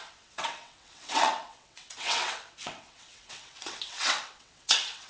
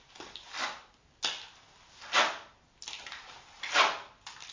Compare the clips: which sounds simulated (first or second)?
first